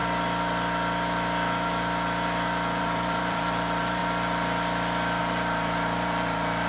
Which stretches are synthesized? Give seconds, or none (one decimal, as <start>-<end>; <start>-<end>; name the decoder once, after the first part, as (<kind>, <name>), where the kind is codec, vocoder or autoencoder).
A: 2.8-4.0 (vocoder, BigVGAN v2); 5.2-6.7